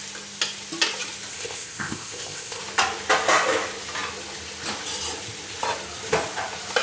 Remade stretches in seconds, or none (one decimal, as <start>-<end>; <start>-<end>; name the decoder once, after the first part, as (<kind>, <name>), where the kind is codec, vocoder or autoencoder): 1.3-2.6 (codec, ZipCodec)